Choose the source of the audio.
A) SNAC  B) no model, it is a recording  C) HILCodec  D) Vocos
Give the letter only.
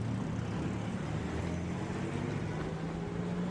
B